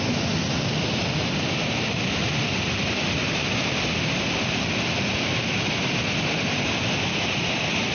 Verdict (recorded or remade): recorded